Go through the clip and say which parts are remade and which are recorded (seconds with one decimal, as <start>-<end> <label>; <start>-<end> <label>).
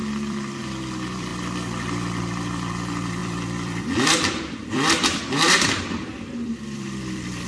0.0-1.3 remade; 1.3-2.2 recorded; 2.2-7.5 remade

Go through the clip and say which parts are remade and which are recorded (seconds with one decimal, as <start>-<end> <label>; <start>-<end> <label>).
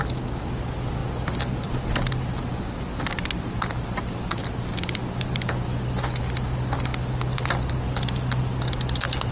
0.0-9.3 recorded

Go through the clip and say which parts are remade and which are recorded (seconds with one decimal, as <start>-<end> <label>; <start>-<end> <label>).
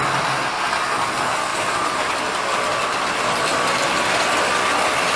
0.0-1.5 recorded; 1.5-2.2 remade; 2.2-5.2 recorded